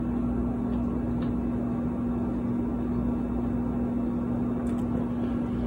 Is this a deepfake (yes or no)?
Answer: no